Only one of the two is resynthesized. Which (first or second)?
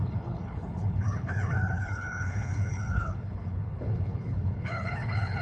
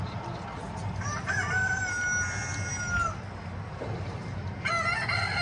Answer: first